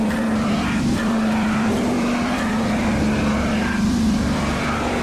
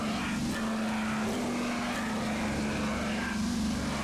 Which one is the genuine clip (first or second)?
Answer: second